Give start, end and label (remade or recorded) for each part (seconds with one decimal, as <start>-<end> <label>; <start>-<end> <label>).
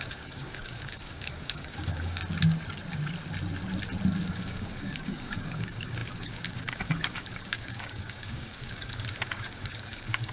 0.0-2.2 remade; 2.2-4.3 recorded; 4.3-10.3 remade